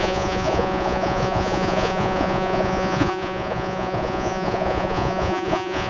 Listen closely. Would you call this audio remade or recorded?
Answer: remade